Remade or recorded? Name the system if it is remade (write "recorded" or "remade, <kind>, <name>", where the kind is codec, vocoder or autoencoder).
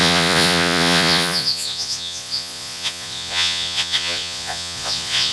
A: remade, vocoder, Vocos